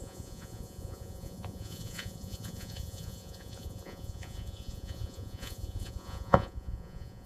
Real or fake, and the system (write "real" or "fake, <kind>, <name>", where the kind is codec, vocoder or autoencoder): fake, vocoder, Vocos